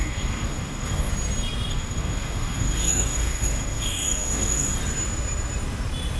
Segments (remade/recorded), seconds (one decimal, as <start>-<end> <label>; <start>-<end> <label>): 0.0-1.1 remade; 1.1-1.7 recorded; 1.7-4.8 remade; 4.8-6.2 recorded